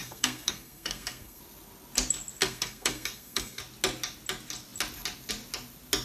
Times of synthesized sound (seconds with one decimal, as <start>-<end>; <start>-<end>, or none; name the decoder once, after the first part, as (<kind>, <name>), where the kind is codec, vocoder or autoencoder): 0.0-1.4 (codec, SNAC); 2.4-3.6